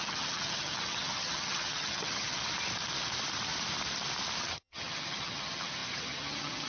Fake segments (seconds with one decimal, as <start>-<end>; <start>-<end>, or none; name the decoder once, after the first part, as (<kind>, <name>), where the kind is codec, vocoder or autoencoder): 0.0-2.4 (vocoder, HiFi-GAN); 4.4-6.7